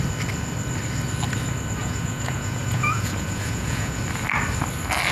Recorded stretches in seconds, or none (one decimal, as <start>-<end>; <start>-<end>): 0.0-1.8; 4.0-5.1